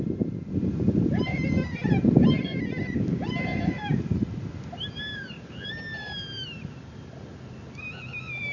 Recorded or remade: recorded